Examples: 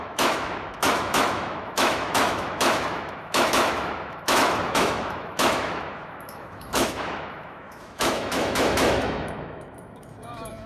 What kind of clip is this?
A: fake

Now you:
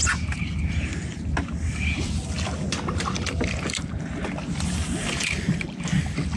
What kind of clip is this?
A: real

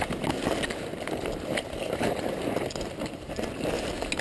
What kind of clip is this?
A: real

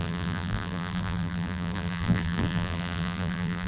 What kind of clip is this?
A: fake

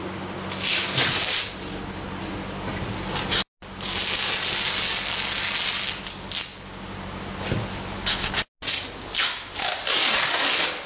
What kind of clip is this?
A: real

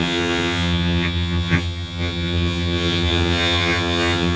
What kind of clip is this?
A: fake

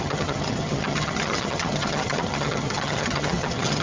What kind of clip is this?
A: fake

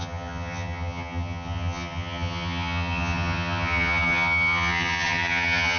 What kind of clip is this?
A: fake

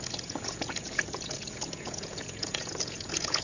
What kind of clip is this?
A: fake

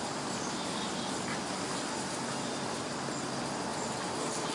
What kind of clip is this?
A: real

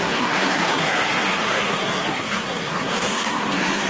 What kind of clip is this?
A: fake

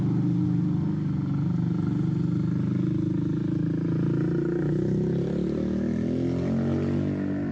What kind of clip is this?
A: real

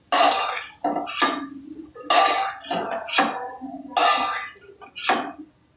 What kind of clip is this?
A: real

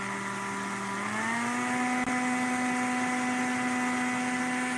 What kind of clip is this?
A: real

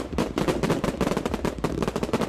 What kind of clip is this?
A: fake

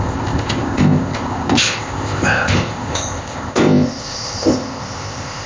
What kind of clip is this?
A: fake